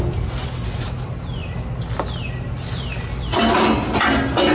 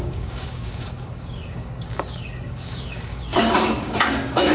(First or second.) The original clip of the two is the first